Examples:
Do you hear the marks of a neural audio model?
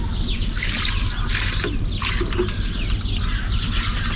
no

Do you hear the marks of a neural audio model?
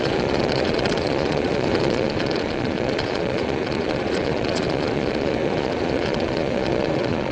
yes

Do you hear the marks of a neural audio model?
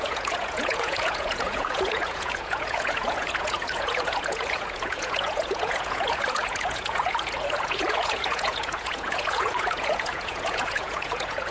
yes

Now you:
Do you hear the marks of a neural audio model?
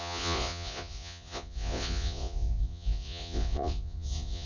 yes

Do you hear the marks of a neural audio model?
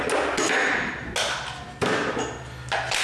no